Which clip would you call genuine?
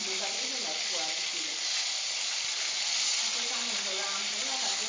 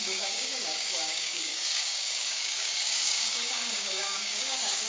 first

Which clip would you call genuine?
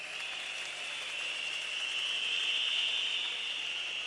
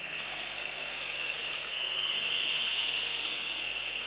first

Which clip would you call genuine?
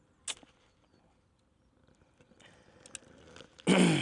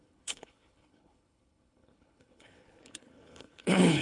first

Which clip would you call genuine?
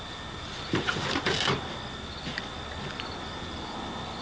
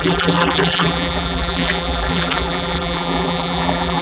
first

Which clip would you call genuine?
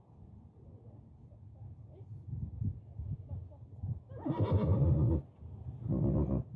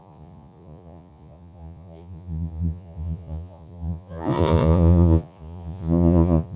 first